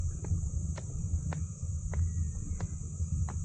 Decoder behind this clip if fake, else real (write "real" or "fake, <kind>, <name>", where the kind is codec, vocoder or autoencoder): real